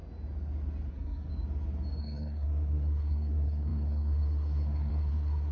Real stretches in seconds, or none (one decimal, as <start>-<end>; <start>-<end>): 0.0-0.9; 1.3-2.0